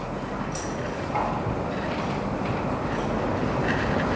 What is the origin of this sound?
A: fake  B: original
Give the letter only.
B